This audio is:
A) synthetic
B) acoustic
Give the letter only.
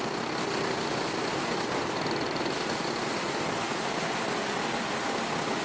B